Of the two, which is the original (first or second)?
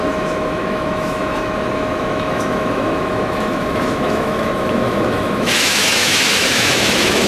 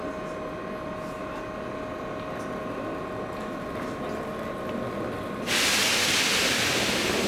second